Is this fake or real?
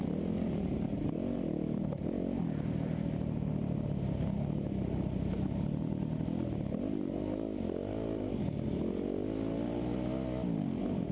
real